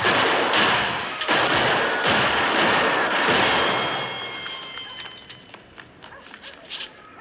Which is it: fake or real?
real